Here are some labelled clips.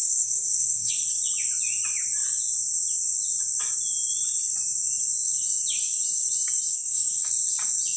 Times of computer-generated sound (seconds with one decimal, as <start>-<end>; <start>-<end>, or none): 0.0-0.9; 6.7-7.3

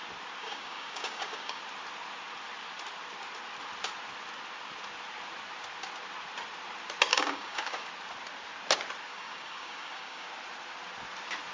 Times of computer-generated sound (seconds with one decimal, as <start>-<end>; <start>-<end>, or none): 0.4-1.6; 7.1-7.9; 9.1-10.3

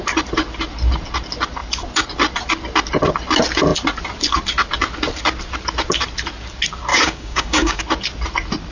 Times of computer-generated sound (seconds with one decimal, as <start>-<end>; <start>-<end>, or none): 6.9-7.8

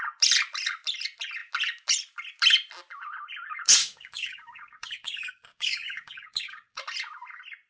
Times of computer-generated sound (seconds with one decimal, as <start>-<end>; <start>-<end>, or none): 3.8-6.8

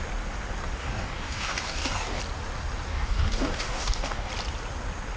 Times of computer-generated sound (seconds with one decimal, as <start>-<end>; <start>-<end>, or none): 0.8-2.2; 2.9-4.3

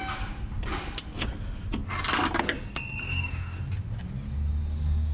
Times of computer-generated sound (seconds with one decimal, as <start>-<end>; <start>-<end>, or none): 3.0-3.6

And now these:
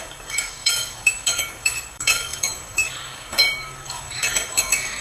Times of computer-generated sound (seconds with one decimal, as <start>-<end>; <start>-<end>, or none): 0.0-5.0

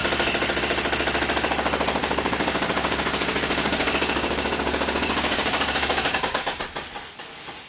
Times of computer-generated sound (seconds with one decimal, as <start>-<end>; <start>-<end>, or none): 2.0-6.6